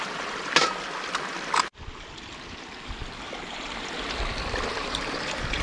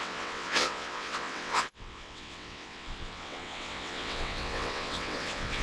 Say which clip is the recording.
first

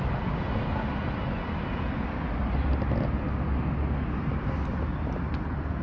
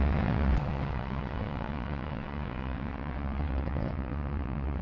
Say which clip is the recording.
first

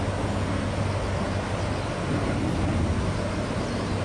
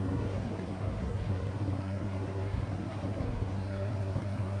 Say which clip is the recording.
first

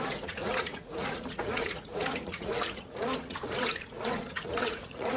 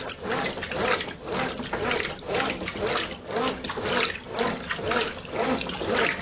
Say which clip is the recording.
second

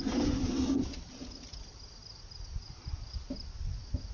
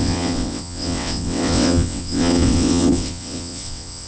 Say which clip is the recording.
first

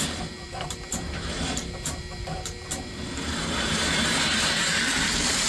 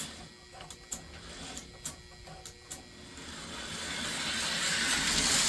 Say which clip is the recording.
second